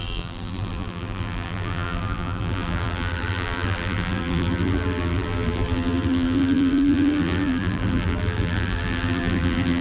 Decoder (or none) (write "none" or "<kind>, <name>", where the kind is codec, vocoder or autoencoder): vocoder, BigVGAN v2